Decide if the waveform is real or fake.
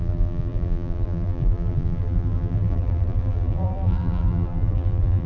fake